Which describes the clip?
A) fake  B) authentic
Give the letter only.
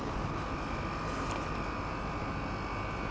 B